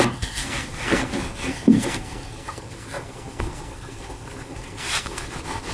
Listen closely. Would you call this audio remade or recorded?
remade